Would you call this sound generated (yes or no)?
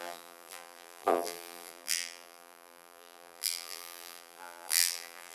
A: yes